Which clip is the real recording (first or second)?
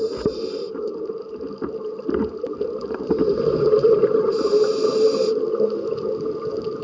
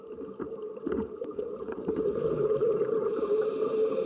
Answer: first